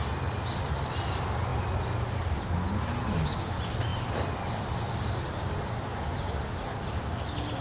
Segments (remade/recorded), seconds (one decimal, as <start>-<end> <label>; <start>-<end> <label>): 0.0-7.6 recorded